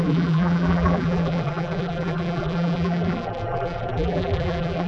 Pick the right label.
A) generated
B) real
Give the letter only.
A